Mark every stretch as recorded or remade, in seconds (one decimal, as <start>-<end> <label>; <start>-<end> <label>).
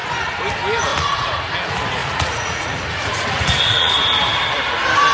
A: 0.0-0.9 recorded; 0.9-1.4 remade; 1.4-2.0 recorded; 2.0-3.9 remade; 3.9-5.1 recorded